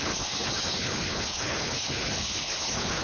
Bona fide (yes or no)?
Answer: no